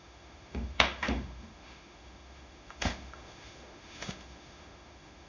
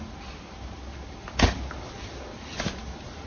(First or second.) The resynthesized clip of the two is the first